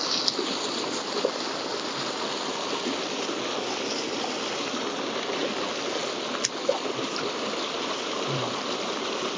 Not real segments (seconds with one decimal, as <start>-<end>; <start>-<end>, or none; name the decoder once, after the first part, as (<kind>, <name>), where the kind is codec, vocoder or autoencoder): none